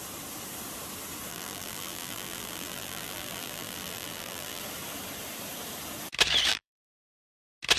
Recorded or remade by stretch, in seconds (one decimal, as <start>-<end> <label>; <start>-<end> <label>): 0.0-1.3 recorded; 1.3-4.6 remade; 4.6-6.5 recorded; 6.5-7.3 remade; 7.3-7.8 recorded